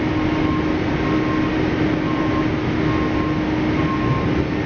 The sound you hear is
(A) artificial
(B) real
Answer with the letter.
B